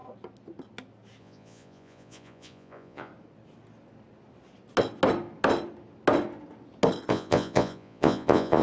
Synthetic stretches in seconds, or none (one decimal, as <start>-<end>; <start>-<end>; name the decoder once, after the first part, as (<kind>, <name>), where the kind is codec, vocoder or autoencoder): 1.2-3.1 (vocoder, Vocos); 7.1-8.6